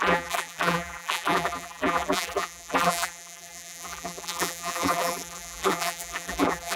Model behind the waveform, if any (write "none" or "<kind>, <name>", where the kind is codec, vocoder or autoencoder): vocoder, BigVGAN v2